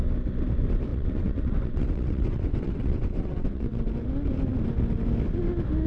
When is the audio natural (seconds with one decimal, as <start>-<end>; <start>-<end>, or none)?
0.0-0.9; 3.9-5.9